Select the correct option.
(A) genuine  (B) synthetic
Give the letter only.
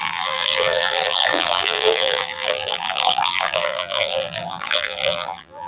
B